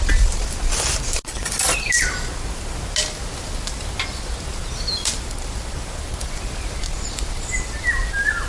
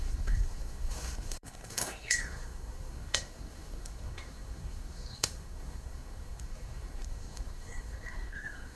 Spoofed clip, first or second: second